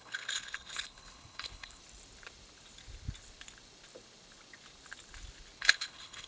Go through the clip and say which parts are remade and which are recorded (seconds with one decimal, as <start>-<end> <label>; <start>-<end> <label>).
0.0-1.8 remade; 1.8-5.6 recorded; 5.6-6.3 remade